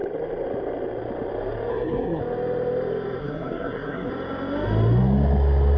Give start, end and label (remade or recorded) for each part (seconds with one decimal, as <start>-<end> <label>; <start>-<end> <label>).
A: 0.0-1.7 recorded; 1.7-2.2 remade; 2.2-3.2 recorded; 3.2-4.1 remade; 4.1-5.8 recorded